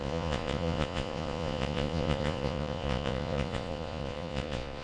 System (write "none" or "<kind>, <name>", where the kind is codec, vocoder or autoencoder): vocoder, Vocos